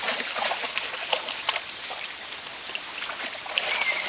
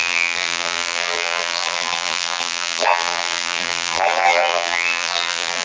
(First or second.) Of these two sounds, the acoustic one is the first